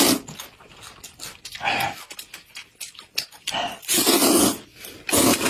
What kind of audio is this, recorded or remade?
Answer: recorded